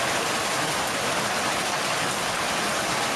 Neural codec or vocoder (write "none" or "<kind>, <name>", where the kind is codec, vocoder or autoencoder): none